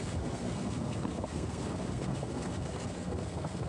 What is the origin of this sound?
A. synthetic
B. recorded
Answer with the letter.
A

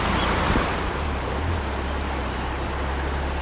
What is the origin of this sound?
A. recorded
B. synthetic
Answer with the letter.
A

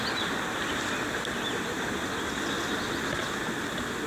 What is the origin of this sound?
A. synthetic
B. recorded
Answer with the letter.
B